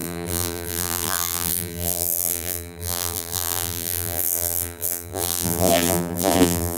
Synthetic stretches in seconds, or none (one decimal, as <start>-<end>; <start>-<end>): 0.0-6.8